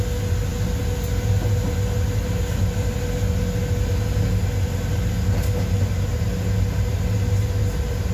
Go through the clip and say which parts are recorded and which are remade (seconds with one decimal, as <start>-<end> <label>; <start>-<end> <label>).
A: 0.0-8.1 recorded